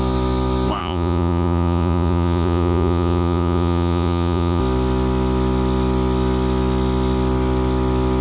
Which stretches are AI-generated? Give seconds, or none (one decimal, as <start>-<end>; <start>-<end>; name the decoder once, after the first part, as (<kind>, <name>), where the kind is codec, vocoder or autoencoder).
0.8-4.6 (vocoder, Vocos)